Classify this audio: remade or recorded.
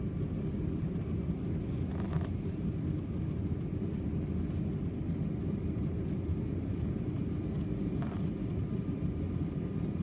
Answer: recorded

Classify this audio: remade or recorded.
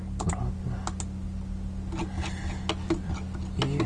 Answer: recorded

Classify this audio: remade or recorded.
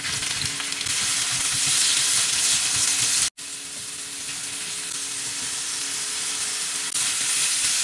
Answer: recorded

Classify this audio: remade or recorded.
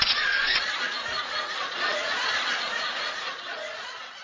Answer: remade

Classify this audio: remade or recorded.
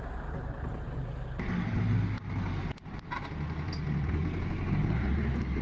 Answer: recorded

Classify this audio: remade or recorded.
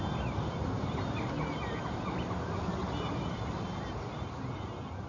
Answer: recorded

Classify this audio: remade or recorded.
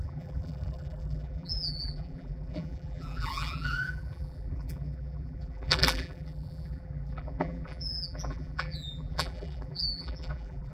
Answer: remade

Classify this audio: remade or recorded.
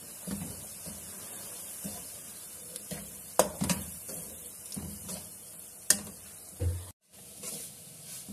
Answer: recorded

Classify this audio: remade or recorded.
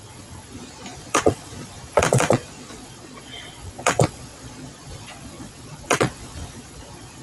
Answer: remade